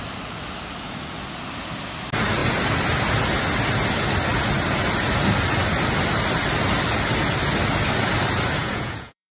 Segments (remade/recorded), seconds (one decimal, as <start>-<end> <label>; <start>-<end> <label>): 0.0-8.6 recorded; 8.6-9.3 remade